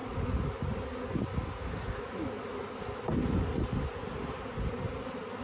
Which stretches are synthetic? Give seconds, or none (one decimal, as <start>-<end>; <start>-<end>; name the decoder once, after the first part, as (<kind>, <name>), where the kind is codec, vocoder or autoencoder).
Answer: none